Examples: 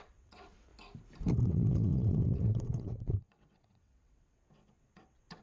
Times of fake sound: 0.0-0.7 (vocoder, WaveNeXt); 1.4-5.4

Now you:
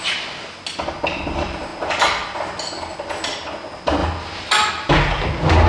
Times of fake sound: none

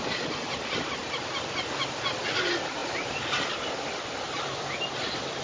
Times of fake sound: none

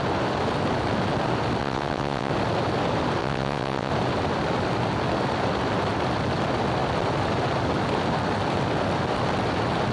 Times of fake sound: 1.6-2.3 (vocoder, WaveNeXt); 3.2-3.9

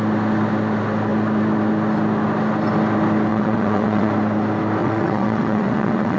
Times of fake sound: 3.3-4.1 (vocoder, WaveNeXt); 4.8-6.2

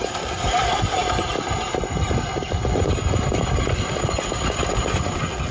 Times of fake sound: none

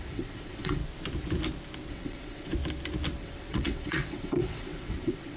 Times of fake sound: 0.0-0.8 (vocoder, WaveNeXt); 1.9-2.5; 3.2-5.4